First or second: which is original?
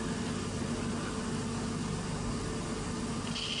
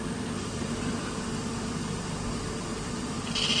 first